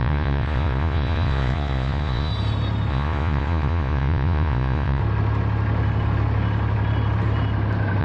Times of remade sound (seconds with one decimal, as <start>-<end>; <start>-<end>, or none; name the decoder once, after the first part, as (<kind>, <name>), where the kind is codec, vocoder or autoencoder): 0.0-2.3 (vocoder, Vocos); 2.9-5.0